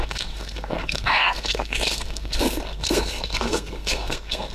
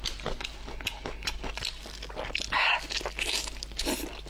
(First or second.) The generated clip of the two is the first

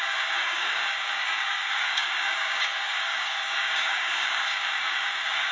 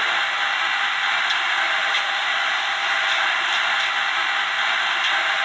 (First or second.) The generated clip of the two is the first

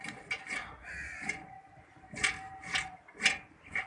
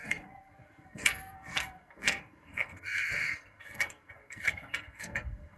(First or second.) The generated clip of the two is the second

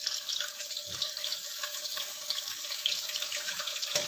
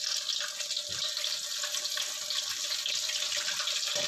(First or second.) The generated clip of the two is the first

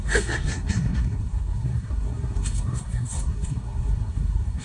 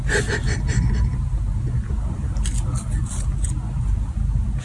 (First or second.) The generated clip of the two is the first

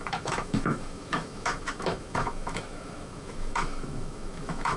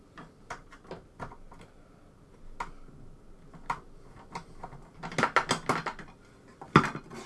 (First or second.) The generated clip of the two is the first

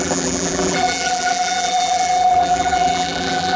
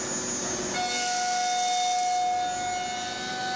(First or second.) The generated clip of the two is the first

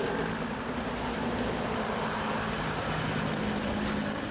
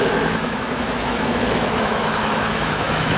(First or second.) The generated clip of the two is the second